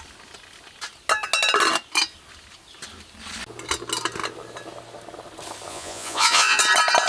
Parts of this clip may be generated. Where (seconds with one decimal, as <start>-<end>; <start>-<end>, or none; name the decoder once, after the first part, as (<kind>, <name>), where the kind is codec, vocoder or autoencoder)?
5.7-6.6 (vocoder, Vocos)

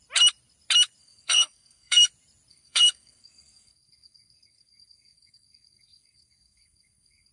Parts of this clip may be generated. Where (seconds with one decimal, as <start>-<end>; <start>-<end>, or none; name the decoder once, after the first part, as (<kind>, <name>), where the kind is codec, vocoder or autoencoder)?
1.0-2.1 (codec, SNAC); 2.5-7.3